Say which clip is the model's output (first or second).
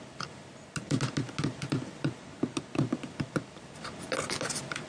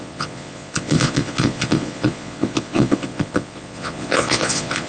second